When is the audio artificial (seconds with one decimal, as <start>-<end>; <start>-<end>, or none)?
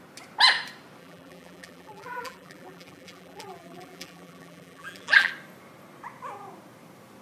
1.0-5.3